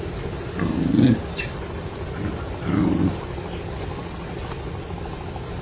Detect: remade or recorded recorded